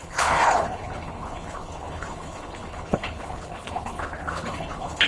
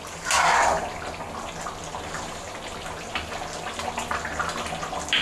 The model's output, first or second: first